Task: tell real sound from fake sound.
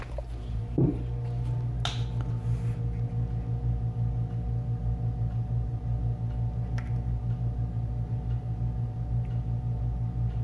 real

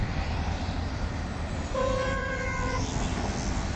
fake